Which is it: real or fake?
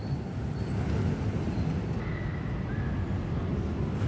real